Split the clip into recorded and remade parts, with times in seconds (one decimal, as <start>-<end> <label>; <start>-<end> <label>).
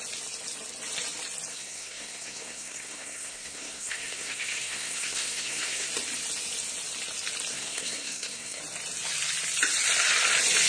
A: 0.0-1.5 recorded; 1.5-5.9 remade; 5.9-7.5 recorded; 7.5-8.6 remade; 8.6-10.7 recorded